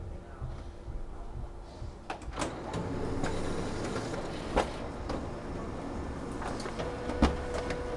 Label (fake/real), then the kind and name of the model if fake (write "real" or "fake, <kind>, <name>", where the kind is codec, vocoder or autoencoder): real